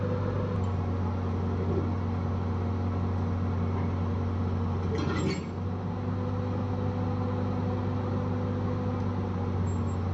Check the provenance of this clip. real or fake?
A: real